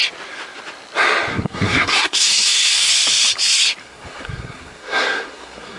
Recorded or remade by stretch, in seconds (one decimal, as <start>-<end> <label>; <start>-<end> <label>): 0.0-1.3 recorded; 1.3-2.9 remade; 2.9-3.8 recorded; 3.8-5.8 remade